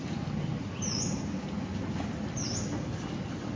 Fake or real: real